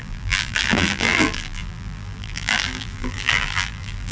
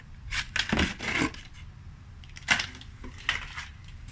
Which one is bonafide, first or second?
second